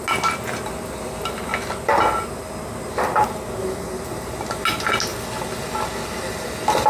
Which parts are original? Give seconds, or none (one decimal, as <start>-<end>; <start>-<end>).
0.0-6.9